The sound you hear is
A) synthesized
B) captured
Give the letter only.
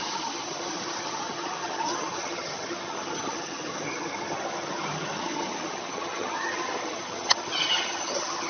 A